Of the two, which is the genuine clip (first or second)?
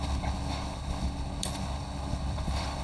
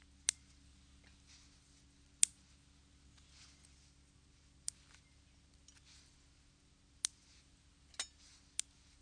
second